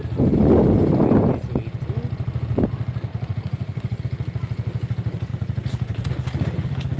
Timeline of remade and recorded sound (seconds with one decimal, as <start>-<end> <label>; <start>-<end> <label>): 0.0-3.1 recorded; 3.1-4.0 remade; 4.0-5.3 recorded; 5.3-6.1 remade; 6.1-7.0 recorded